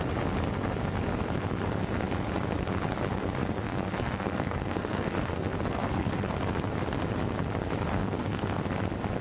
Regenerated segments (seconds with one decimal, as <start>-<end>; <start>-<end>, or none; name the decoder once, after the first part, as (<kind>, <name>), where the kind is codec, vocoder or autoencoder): 3.4-6.1 (codec, SNAC); 7.9-8.6